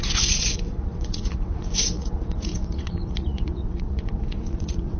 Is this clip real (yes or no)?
no